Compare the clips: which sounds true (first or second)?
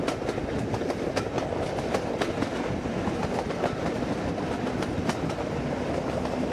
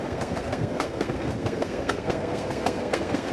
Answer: first